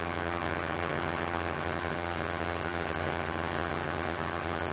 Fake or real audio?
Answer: fake